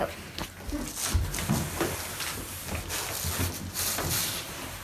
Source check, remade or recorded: recorded